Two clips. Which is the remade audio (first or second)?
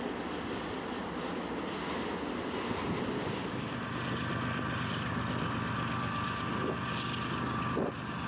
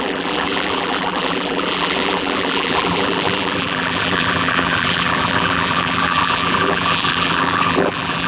second